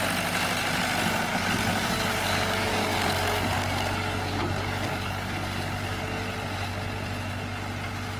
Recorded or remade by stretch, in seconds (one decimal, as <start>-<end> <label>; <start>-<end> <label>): 0.0-1.3 recorded; 1.3-6.0 remade; 6.0-8.2 recorded

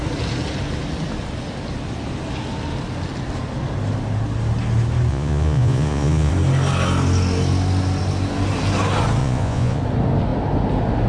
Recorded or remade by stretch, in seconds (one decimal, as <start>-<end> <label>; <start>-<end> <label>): 0.0-5.1 recorded; 5.1-6.3 remade; 6.3-9.2 recorded; 9.2-9.8 remade; 9.8-11.1 recorded

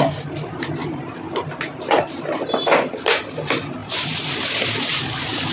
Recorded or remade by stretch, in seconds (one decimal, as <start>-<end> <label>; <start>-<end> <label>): 0.0-0.8 recorded; 0.8-3.0 remade; 3.0-3.8 recorded; 3.8-4.3 remade; 4.3-5.5 recorded

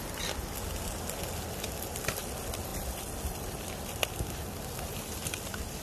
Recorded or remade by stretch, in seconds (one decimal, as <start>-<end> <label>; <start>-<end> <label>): 0.0-5.8 recorded

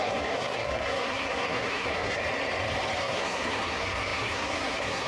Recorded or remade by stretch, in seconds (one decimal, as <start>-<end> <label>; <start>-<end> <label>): 0.0-2.2 remade; 2.2-3.0 recorded; 3.0-5.1 remade